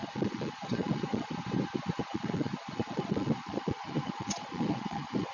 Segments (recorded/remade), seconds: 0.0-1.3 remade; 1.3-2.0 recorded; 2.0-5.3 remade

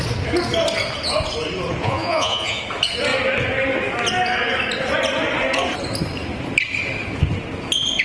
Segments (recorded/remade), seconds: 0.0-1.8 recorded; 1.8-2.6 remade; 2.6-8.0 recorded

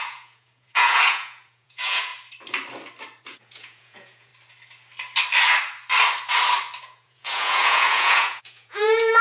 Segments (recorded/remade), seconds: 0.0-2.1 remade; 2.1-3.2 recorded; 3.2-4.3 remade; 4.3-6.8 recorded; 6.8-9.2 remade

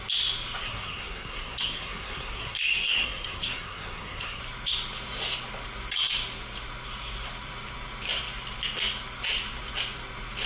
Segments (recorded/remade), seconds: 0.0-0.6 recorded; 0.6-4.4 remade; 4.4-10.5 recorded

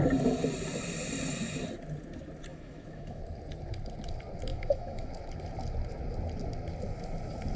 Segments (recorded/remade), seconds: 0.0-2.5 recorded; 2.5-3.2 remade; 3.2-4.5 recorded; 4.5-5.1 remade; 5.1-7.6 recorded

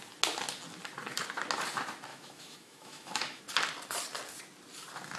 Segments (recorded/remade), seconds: 0.0-2.1 recorded; 2.1-3.4 remade; 3.4-5.2 recorded

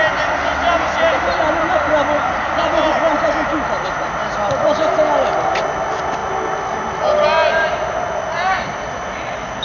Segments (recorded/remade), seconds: 0.0-9.6 recorded